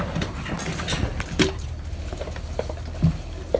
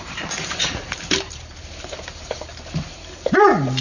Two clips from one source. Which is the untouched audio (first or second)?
first